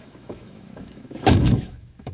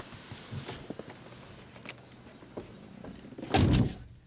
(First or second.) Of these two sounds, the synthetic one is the first